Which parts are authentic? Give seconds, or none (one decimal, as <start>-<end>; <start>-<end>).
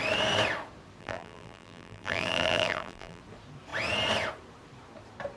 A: 0.0-1.0; 3.2-5.4